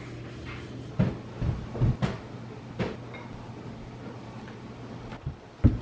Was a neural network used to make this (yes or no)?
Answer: no